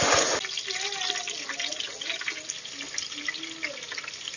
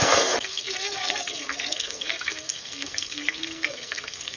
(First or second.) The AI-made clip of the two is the second